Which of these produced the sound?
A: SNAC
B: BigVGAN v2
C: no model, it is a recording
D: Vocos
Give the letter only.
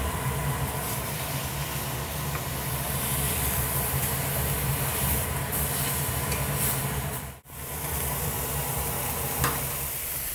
C